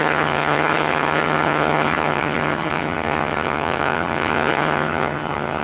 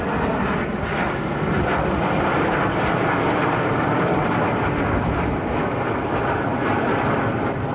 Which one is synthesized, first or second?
first